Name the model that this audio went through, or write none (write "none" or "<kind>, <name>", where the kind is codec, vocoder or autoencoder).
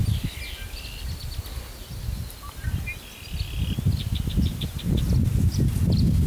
none